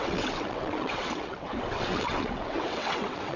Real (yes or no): no